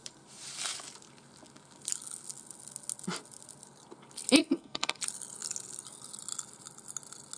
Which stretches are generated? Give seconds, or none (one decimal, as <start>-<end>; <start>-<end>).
4.4-5.0